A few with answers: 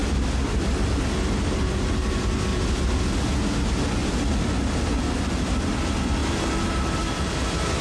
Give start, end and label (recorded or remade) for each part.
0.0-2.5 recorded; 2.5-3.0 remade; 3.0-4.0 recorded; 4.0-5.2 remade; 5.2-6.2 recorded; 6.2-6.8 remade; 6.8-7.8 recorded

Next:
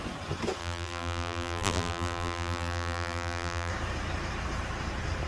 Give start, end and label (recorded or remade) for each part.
0.0-0.6 recorded; 0.6-3.7 remade; 3.7-5.3 recorded

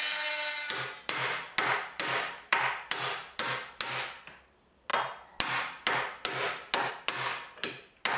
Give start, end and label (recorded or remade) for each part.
0.0-2.5 recorded; 2.5-3.1 remade; 3.1-8.2 recorded

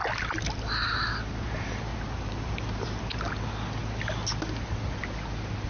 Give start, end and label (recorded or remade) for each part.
0.0-1.9 recorded; 1.9-3.0 remade; 3.0-5.7 recorded

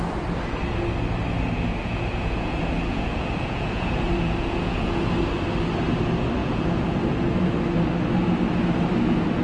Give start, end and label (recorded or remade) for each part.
0.0-1.8 recorded; 1.8-5.1 remade; 5.1-6.4 recorded; 6.4-7.0 remade; 7.0-9.4 recorded

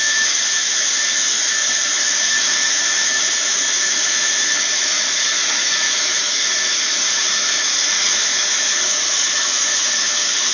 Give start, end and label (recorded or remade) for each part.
0.0-10.5 remade

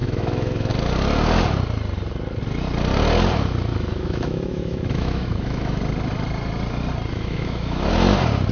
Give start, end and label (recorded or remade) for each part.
0.0-0.7 remade; 0.7-3.7 recorded; 3.7-5.8 remade; 5.8-7.1 recorded; 7.1-7.9 remade; 7.9-8.5 recorded

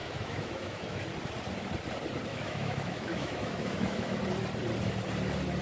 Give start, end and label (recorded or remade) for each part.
0.0-1.0 remade; 1.0-2.3 recorded; 2.3-4.2 remade; 4.2-5.6 recorded